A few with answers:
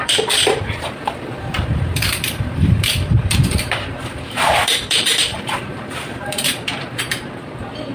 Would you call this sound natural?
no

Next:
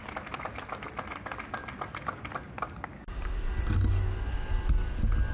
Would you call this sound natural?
yes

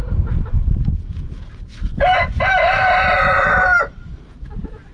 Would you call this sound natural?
yes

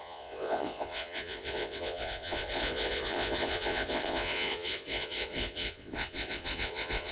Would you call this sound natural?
no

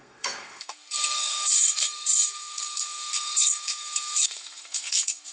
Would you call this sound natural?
no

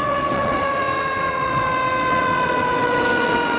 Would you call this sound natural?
no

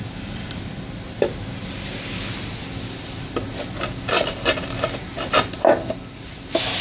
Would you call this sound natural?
yes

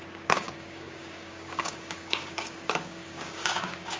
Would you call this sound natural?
no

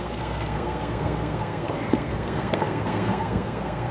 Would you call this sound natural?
no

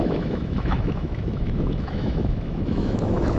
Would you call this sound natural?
no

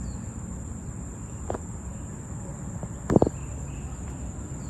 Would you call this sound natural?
yes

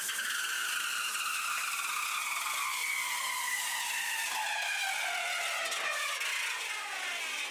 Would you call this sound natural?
yes